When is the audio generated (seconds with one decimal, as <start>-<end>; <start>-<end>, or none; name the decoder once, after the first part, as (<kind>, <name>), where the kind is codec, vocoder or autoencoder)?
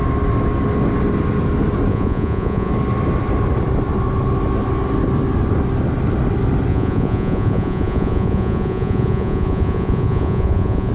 1.9-2.7 (vocoder, Vocos); 6.7-10.9